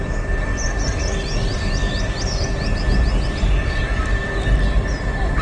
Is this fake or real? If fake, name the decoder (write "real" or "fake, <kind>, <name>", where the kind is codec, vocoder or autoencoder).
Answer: real